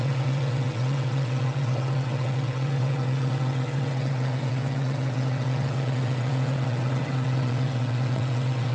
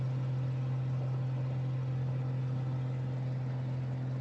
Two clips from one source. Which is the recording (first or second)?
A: second